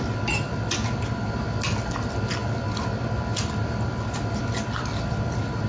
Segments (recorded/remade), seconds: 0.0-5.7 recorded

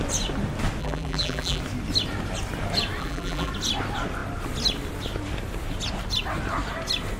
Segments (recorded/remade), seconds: 0.0-0.8 recorded; 0.8-1.6 remade; 1.6-3.0 recorded; 3.0-3.5 remade; 3.5-7.2 recorded

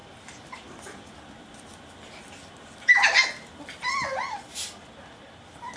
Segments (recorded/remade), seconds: 0.0-5.8 recorded

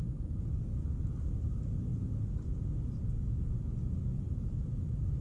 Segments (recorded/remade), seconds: 0.0-1.9 recorded; 1.9-5.2 remade

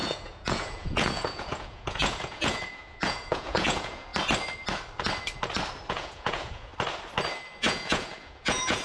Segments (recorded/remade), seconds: 0.0-4.1 remade; 4.1-5.9 recorded; 5.9-6.7 remade; 6.7-7.6 recorded; 7.6-8.8 remade

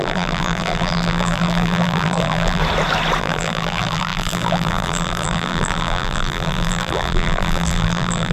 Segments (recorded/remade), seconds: 0.0-2.6 remade; 2.6-3.2 recorded; 3.2-8.3 remade